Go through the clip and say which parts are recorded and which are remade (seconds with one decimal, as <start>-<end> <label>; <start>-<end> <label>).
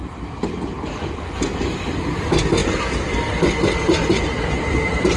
0.0-5.2 recorded